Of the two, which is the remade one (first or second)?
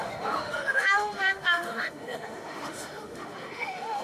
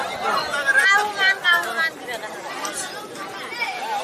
first